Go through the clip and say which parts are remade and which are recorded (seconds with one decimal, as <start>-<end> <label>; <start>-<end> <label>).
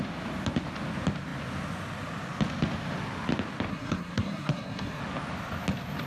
0.0-3.7 recorded; 3.7-5.0 remade; 5.0-6.1 recorded